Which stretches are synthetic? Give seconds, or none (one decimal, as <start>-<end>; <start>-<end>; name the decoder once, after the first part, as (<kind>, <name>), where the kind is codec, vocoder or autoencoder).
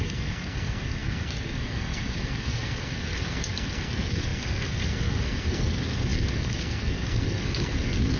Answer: 0.0-8.2 (codec, SNAC)